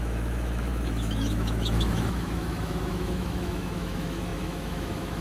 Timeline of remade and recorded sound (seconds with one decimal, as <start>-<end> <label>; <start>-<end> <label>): 0.0-5.2 remade